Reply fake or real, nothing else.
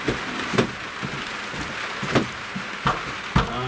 real